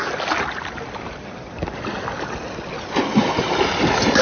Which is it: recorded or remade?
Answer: recorded